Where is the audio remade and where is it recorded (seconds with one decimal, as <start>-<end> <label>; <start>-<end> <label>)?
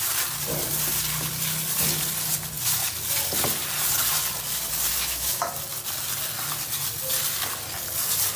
0.0-4.9 recorded; 4.9-5.5 remade; 5.5-8.4 recorded